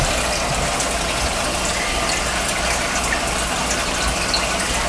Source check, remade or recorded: recorded